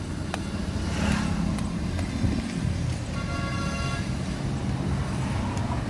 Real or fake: real